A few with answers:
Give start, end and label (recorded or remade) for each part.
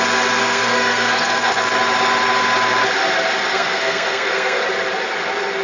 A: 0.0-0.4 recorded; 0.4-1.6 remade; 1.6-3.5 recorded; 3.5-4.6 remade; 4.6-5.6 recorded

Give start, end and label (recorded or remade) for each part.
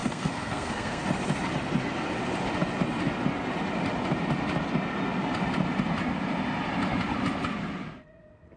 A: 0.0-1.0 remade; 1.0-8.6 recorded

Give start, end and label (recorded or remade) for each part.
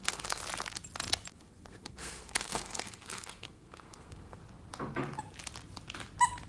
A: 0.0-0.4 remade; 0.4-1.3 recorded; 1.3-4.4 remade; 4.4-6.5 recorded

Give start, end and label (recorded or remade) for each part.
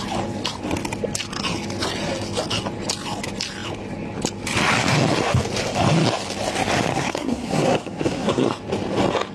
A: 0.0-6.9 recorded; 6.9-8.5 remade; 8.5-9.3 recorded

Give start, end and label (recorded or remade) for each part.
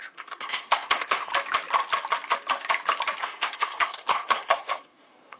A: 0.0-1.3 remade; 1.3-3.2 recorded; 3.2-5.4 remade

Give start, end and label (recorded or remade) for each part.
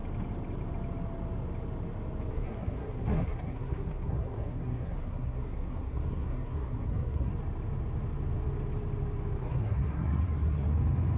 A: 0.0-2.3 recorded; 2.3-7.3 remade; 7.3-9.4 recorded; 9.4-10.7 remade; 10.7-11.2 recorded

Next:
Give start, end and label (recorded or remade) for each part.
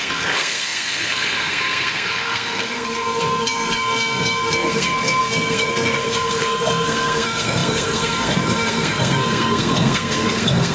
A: 0.0-10.7 remade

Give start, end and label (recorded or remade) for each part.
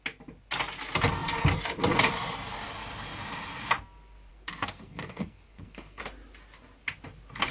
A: 0.0-4.3 recorded; 4.3-6.0 remade; 6.0-7.5 recorded